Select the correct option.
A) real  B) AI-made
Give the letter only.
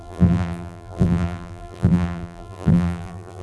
B